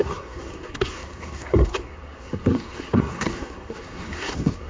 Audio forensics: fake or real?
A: fake